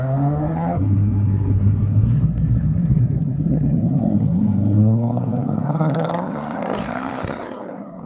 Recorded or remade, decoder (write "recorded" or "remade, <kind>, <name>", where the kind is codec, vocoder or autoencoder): remade, codec, SNAC